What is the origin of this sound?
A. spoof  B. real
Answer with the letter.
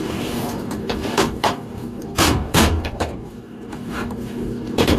A